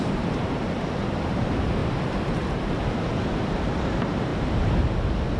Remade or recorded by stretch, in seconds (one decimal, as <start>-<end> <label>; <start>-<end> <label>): 0.0-4.3 remade; 4.3-5.4 recorded